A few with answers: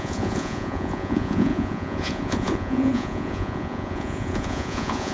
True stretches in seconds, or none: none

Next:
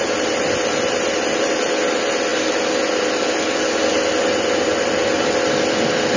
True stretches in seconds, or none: 0.0-6.2

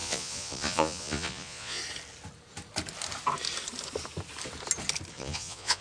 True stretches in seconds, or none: 1.8-5.1

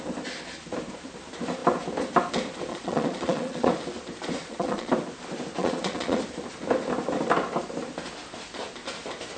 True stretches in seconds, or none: 0.0-2.7; 3.7-4.4; 4.9-5.6; 6.2-9.4

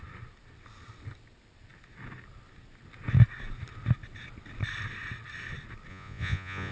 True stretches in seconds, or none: 0.0-5.9